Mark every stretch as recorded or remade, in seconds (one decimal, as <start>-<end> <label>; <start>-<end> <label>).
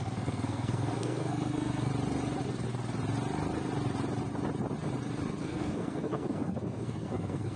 0.0-1.9 remade; 1.9-5.4 recorded; 5.4-7.6 remade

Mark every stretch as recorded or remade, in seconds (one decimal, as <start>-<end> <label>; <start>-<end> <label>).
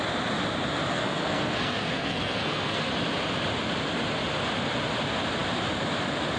0.0-0.9 recorded; 0.9-2.9 remade; 2.9-6.4 recorded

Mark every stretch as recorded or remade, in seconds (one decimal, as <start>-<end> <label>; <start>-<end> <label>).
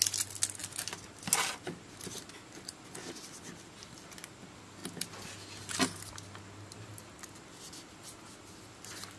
0.0-9.2 recorded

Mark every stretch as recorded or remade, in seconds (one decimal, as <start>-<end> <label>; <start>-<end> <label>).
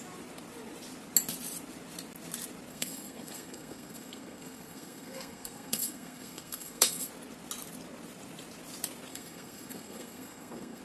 0.0-2.7 recorded; 2.7-7.1 remade; 7.1-9.1 recorded; 9.1-10.8 remade